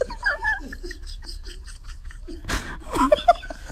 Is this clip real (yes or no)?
no